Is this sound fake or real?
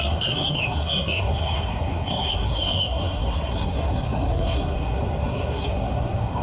fake